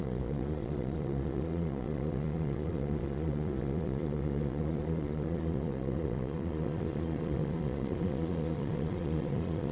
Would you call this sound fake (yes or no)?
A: yes